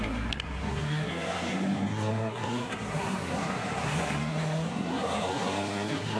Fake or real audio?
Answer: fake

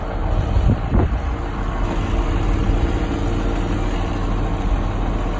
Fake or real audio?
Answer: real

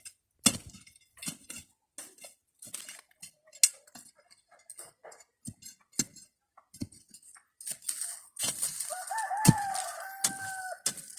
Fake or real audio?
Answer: real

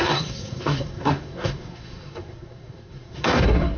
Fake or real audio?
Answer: fake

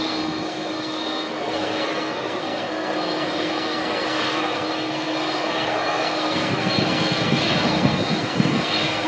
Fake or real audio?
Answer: fake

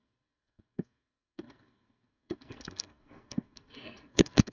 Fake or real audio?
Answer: fake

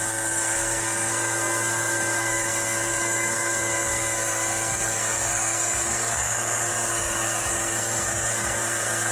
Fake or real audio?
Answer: fake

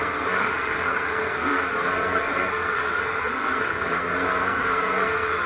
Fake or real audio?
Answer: fake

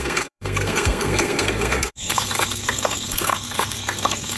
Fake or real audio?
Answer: fake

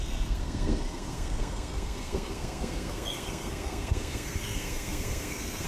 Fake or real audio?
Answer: fake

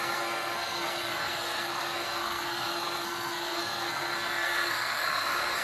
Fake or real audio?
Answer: fake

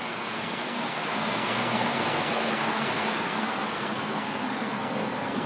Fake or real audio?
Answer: fake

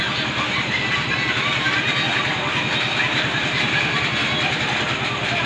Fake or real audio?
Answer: real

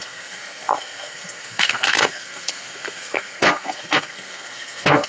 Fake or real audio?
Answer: fake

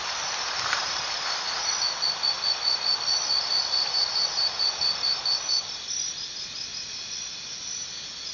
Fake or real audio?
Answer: real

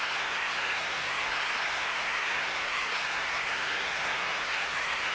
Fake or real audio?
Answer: fake